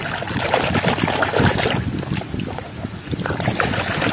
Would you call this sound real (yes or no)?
yes